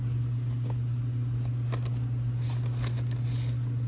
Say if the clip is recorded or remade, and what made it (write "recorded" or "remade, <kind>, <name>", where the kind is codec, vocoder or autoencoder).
recorded